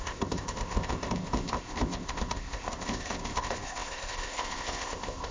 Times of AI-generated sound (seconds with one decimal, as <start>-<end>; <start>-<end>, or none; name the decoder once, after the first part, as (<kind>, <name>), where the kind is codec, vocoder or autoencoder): 0.0-5.3 (codec, ZipCodec)